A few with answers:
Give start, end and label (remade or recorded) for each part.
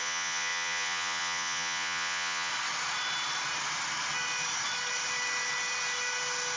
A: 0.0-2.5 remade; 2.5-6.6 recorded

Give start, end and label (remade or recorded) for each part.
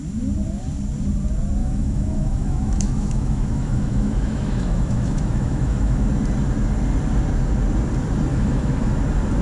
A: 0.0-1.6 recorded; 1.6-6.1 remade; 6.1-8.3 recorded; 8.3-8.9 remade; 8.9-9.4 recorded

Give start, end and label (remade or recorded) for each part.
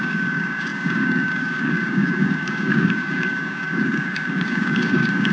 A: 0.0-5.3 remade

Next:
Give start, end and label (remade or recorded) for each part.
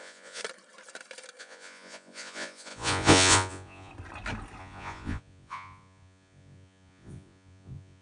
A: 0.0-0.4 remade; 0.4-1.4 recorded; 1.4-3.9 remade; 3.9-4.6 recorded; 4.6-8.0 remade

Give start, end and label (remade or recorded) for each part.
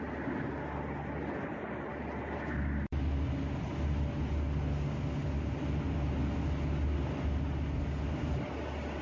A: 0.0-9.0 recorded